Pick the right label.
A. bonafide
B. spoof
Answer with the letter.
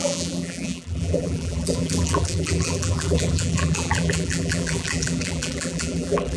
B